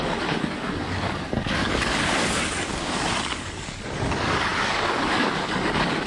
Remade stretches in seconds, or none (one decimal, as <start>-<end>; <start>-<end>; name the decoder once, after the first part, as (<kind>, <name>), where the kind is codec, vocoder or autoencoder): 0.0-6.1 (codec, DAC)